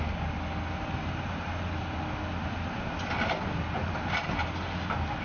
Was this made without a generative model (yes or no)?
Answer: yes